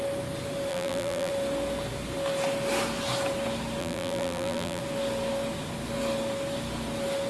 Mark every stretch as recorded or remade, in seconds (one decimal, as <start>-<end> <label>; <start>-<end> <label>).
0.0-0.7 recorded; 0.7-1.3 remade; 1.3-3.8 recorded; 3.8-4.8 remade; 4.8-7.3 recorded